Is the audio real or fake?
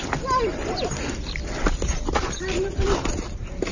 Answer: real